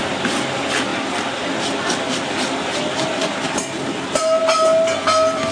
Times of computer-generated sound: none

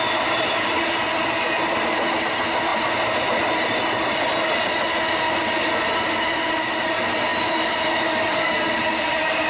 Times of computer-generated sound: none

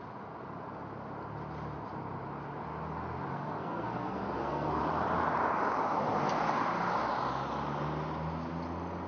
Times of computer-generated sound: 3.3-4.8 (codec, SNAC)